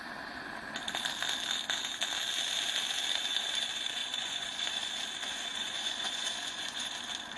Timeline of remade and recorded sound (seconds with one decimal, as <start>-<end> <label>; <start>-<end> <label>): 0.0-4.0 recorded; 4.0-4.9 remade; 4.9-5.5 recorded; 5.5-6.9 remade; 6.9-7.4 recorded